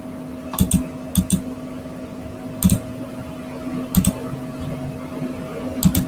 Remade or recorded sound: recorded